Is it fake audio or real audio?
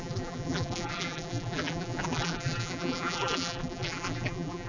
fake